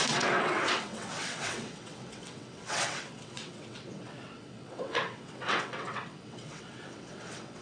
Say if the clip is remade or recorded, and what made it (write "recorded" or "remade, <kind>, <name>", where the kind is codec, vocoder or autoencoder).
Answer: remade, vocoder, WaveNeXt